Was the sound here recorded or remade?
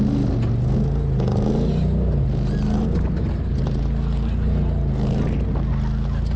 recorded